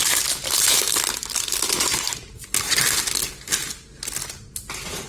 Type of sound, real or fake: real